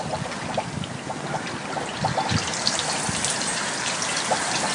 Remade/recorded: recorded